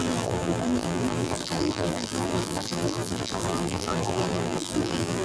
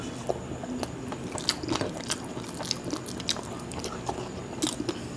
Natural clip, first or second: second